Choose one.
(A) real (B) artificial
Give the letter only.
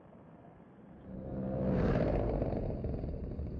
B